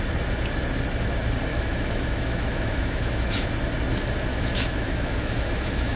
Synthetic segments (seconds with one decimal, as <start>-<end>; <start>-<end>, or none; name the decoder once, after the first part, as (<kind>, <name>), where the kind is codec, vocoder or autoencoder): 1.5-3.5 (autoencoder, DAC-VAE); 4.3-6.0